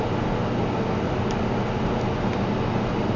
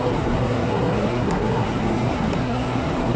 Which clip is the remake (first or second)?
second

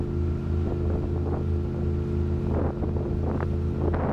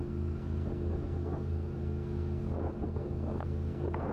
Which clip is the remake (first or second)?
second